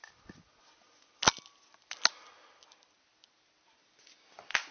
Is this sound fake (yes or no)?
no